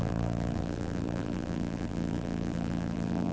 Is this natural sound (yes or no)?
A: no